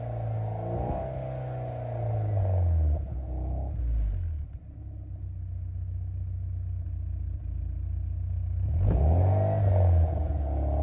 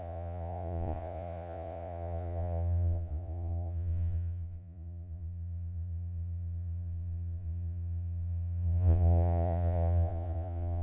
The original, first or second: first